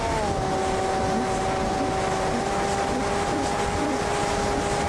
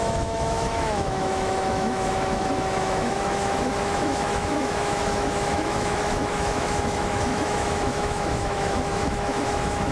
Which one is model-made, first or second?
second